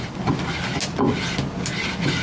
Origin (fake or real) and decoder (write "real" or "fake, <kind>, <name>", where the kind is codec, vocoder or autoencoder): real